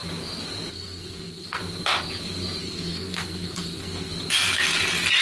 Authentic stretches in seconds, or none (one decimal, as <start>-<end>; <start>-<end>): 0.0-0.7; 1.6-2.6; 4.1-5.2